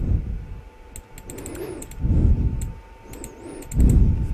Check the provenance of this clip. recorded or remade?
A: recorded